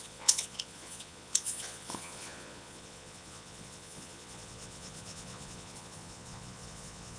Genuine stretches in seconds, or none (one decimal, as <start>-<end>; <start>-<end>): none